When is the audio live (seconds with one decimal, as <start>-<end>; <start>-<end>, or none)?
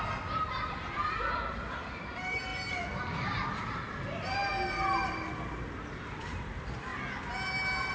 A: 4.4-6.1; 6.9-7.9